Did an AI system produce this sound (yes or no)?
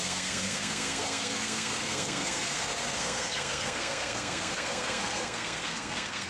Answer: yes